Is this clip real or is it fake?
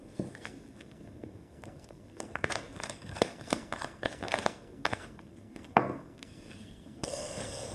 fake